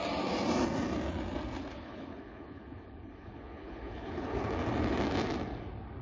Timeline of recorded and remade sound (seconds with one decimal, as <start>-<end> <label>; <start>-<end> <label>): 0.0-1.7 recorded; 1.7-4.4 remade; 4.4-6.0 recorded